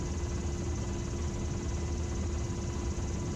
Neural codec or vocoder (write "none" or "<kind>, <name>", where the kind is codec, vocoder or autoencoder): none